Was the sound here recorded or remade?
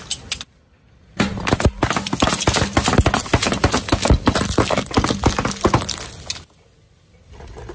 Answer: recorded